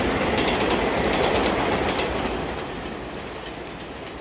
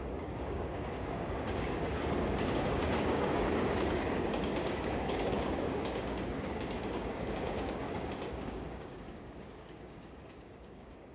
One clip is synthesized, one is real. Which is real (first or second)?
first